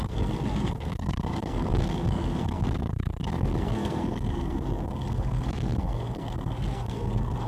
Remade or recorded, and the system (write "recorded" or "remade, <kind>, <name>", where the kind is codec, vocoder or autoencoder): remade, codec, SNAC